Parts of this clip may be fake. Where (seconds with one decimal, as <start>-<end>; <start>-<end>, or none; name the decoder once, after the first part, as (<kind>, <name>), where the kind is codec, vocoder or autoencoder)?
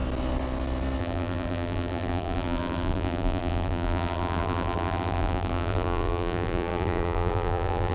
1.0-7.9 (vocoder, BigVGAN v2)